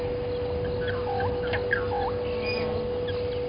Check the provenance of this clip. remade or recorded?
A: recorded